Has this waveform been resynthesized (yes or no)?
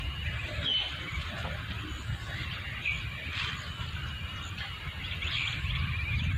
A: no